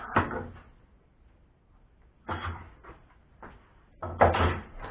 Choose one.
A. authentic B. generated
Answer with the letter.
A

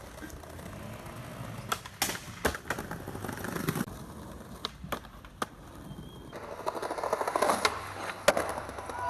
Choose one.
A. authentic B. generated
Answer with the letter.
A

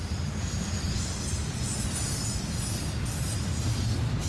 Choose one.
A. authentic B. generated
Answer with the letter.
A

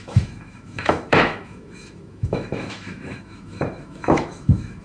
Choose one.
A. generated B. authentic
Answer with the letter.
A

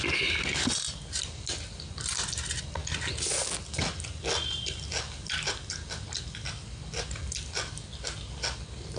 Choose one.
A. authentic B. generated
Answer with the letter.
A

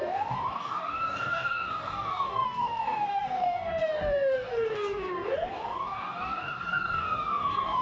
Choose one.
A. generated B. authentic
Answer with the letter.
A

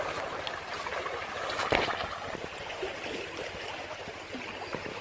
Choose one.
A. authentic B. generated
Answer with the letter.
A